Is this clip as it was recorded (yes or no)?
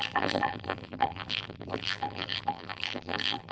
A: no